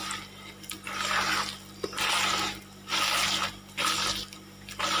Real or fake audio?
real